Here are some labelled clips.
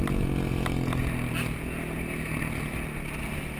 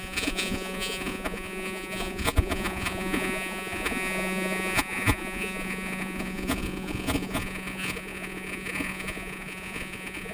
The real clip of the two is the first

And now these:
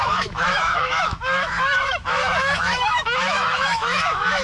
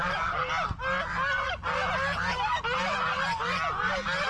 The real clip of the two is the second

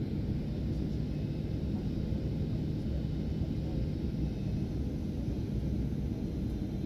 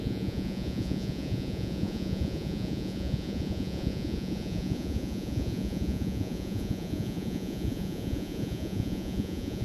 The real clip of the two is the first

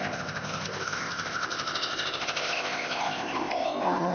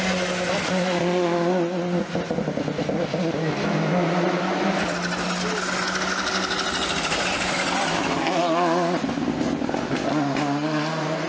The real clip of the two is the second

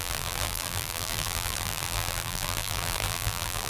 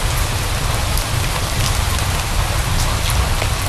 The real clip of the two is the second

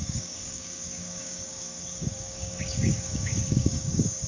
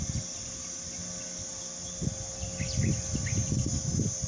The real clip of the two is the second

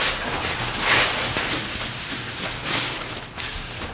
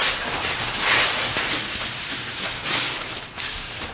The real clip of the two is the first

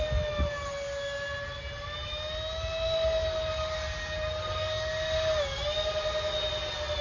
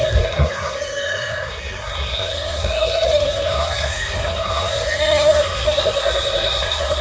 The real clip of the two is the first